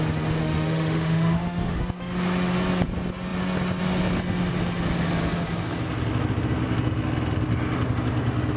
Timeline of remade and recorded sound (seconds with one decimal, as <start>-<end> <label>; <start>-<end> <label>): 0.0-0.4 recorded; 0.4-1.8 remade; 1.8-8.6 recorded